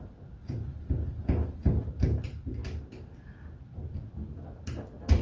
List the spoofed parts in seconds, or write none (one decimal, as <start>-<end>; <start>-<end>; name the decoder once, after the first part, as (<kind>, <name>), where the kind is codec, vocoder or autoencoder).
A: none